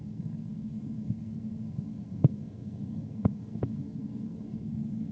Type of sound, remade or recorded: remade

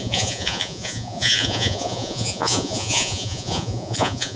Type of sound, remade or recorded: remade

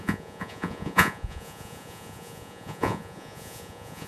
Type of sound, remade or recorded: remade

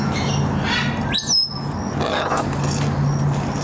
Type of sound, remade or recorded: recorded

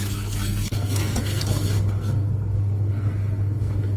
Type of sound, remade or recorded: remade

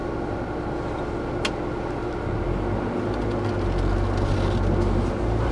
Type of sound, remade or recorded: recorded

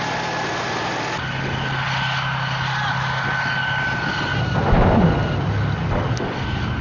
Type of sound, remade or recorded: recorded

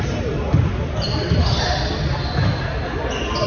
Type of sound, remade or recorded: recorded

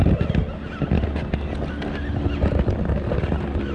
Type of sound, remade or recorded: recorded